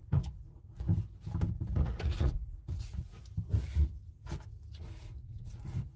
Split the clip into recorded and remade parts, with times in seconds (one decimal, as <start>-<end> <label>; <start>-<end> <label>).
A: 0.0-0.9 remade; 0.9-1.5 recorded; 1.5-3.1 remade; 3.1-4.8 recorded; 4.8-6.0 remade